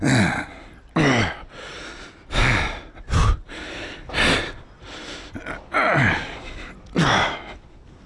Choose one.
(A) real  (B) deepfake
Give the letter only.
A